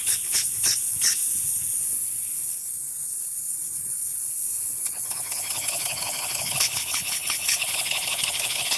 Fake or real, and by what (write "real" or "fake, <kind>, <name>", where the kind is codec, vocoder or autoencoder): fake, codec, HILCodec